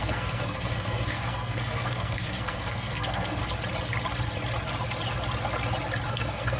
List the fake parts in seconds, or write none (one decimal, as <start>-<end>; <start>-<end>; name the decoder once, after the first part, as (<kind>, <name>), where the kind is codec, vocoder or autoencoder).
0.0-3.4 (codec, SNAC); 6.1-6.6